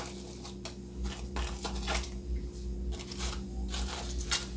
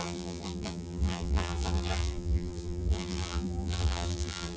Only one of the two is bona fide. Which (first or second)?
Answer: first